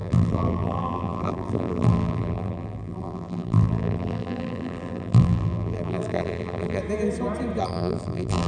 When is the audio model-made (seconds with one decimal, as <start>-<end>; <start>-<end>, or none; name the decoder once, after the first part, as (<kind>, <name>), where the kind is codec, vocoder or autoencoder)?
0.0-6.8 (vocoder, BigVGAN v2); 7.6-8.5